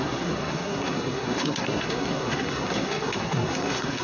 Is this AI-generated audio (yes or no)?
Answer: yes